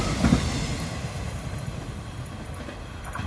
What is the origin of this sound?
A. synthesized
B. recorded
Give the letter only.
B